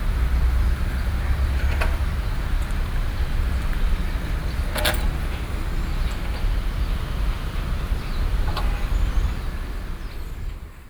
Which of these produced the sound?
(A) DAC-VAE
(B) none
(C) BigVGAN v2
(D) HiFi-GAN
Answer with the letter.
B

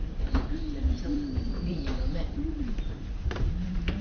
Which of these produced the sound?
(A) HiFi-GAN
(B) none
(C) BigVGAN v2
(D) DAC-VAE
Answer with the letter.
C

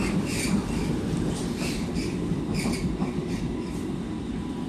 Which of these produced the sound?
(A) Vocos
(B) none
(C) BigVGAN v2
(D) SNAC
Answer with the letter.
C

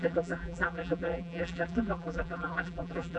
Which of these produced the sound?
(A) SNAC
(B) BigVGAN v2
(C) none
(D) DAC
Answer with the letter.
B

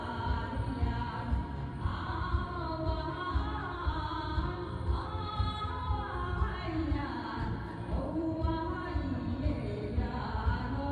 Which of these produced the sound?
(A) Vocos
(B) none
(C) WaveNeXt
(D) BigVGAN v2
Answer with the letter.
D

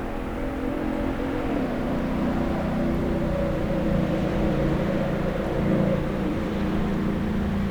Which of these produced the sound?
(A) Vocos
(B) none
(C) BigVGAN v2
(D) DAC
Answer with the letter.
C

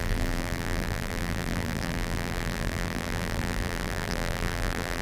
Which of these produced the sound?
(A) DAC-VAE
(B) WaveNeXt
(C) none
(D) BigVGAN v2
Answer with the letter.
D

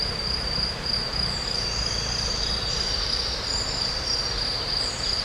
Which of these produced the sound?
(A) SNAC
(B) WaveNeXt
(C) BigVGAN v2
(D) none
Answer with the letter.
C